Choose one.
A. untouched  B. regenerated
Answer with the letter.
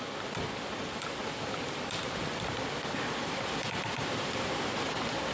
B